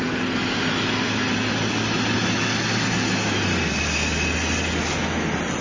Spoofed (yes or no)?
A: no